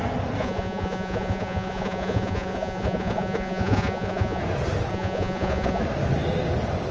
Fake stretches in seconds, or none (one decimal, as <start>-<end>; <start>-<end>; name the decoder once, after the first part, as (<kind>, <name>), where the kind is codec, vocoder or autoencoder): 0.4-4.4 (vocoder, Vocos); 4.9-5.8

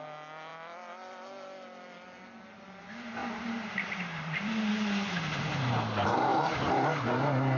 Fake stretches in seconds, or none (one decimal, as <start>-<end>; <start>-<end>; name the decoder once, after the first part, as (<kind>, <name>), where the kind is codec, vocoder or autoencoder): 3.2-5.7 (vocoder, BigVGAN v2)

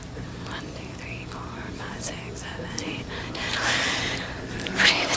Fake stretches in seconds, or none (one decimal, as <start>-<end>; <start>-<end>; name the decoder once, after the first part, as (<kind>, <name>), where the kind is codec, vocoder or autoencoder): 0.0-5.2 (vocoder, BigVGAN v2)

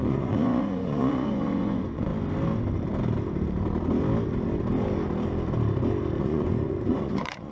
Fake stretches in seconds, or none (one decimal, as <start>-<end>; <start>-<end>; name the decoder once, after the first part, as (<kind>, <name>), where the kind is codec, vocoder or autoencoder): 0.0-2.1 (vocoder, Vocos); 6.2-7.5